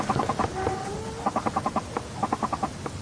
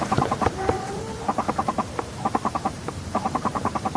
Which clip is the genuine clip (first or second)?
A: first